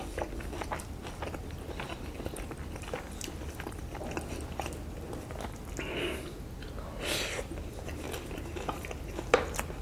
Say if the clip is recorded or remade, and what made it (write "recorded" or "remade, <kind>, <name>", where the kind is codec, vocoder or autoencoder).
recorded